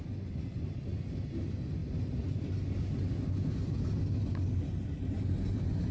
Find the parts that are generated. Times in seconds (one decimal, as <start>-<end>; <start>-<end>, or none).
none